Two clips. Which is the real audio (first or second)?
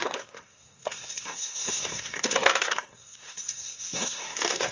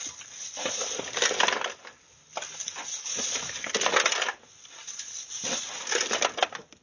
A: second